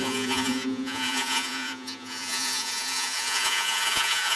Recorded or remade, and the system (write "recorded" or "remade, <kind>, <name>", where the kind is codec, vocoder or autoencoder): remade, vocoder, Vocos